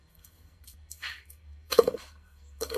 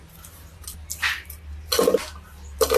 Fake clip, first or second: first